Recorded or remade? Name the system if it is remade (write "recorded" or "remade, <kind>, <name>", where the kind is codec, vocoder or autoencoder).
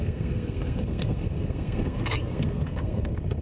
remade, codec, SNAC